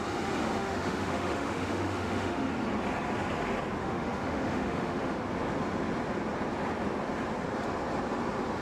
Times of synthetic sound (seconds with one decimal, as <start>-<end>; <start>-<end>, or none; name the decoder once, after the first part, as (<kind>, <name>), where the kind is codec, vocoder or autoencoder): 0.6-2.5 (autoencoder, DAC-VAE); 3.8-5.2